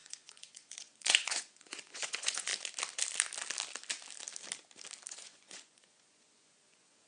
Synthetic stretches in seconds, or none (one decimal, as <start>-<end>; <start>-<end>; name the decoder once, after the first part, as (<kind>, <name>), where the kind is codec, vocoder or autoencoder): 0.0-2.5 (vocoder, Vocos); 5.1-7.1